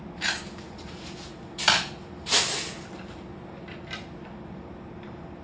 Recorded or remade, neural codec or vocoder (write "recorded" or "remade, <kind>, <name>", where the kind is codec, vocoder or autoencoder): recorded